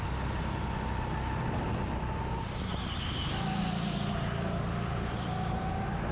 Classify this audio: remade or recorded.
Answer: recorded